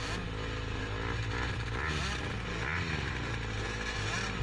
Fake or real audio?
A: real